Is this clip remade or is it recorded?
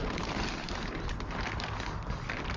recorded